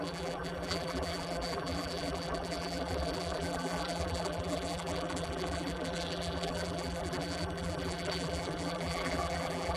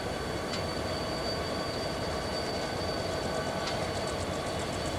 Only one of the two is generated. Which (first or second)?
first